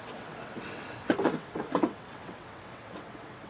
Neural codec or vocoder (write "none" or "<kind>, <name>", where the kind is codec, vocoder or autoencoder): vocoder, WaveNeXt